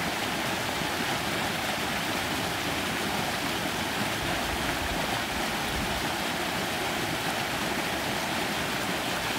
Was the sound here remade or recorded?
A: recorded